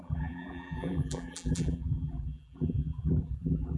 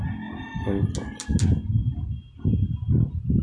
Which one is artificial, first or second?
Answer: first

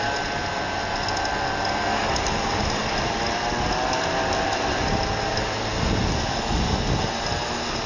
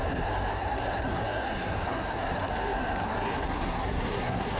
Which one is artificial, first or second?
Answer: second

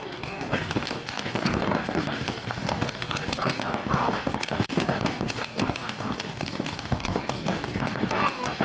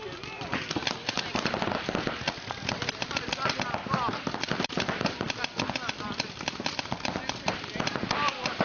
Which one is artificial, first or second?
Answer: first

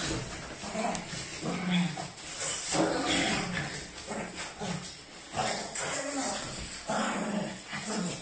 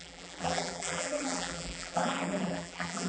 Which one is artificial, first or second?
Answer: second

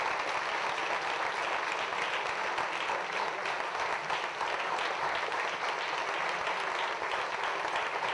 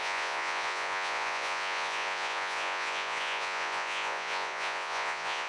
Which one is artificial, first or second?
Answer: second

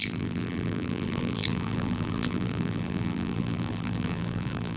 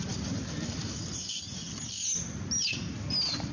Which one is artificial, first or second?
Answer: first